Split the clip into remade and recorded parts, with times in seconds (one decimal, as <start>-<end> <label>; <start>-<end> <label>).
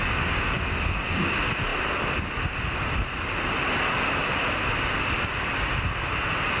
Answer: 0.0-6.6 recorded